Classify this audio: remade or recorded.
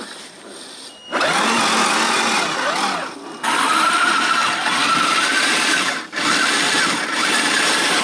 recorded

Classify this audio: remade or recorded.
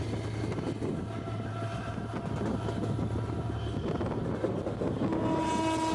recorded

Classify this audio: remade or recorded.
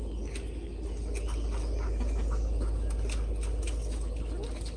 recorded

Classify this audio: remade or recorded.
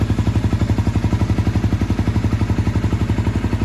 recorded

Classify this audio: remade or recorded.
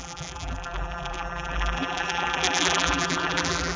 remade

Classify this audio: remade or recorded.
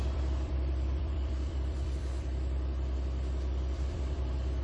remade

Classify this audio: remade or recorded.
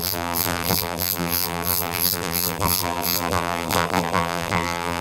remade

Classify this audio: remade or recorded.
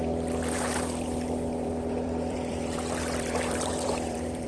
remade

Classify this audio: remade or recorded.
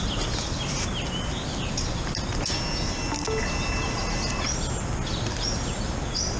recorded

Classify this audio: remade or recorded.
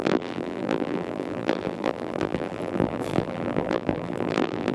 remade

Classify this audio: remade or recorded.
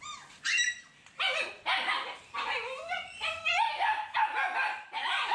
recorded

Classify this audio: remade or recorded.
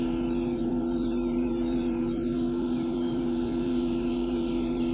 remade